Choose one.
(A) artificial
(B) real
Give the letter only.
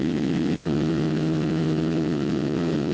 A